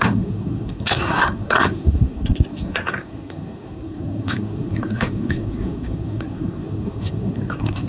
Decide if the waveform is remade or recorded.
remade